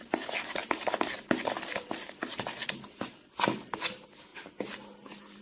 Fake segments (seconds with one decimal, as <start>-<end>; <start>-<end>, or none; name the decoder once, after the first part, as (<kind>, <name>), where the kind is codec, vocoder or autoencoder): none